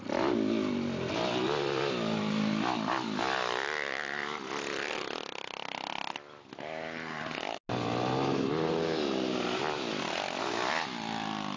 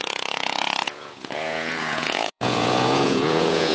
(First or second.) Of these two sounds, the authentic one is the first